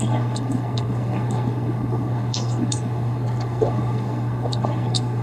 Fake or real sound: fake